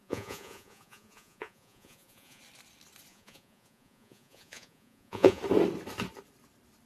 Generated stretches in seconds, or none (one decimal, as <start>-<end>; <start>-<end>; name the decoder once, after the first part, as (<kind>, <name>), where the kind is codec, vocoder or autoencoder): 0.0-2.4 (vocoder, Vocos); 3.1-5.4